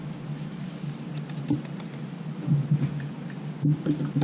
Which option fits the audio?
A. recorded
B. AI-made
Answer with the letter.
A